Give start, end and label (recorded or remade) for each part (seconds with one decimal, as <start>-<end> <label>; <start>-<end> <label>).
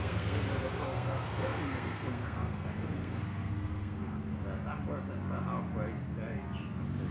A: 0.0-4.4 remade; 4.4-7.1 recorded